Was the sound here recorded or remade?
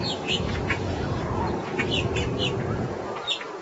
remade